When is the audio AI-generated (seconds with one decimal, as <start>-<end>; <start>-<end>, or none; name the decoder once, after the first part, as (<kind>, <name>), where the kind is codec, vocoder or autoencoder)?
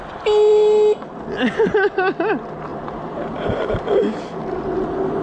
2.7-4.3 (vocoder, BigVGAN v2)